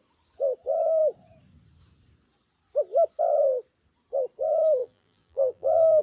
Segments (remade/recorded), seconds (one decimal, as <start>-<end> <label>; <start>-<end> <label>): 0.0-4.8 recorded; 4.8-6.0 remade